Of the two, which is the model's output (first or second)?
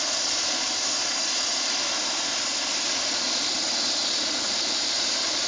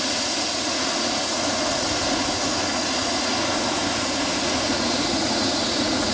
second